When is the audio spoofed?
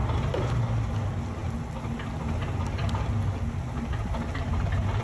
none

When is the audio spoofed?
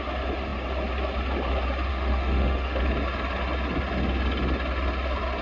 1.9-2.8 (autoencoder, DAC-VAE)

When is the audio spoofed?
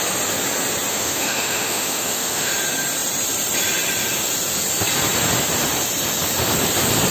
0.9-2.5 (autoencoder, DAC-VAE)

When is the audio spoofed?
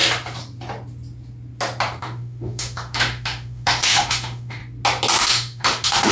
2.0-4.6 (autoencoder, DAC-VAE); 5.2-6.1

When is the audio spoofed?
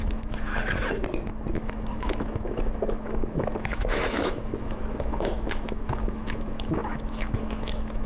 0.0-0.5 (autoencoder, DAC-VAE); 1.5-8.1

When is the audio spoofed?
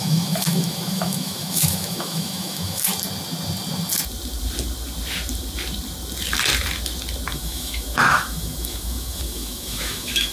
0.0-2.9 (autoencoder, DAC-VAE); 7.3-10.3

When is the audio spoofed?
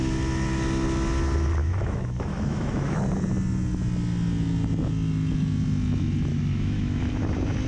1.6-3.0 (autoencoder, DAC-VAE); 6.3-7.0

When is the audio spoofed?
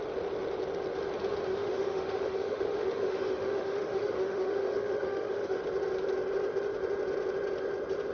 1.5-5.6 (autoencoder, DAC-VAE)